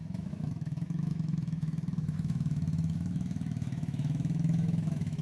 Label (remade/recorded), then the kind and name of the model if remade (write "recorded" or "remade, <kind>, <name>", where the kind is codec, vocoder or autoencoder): remade, autoencoder, DAC-VAE